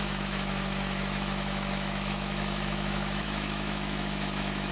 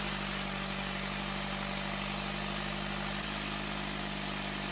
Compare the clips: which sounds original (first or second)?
second